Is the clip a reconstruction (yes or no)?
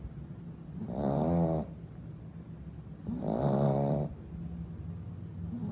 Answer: no